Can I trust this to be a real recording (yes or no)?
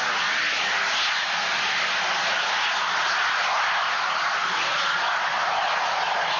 yes